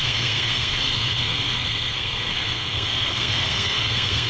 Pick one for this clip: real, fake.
fake